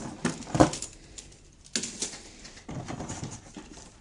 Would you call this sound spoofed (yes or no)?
no